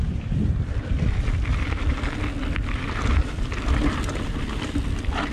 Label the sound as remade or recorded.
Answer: remade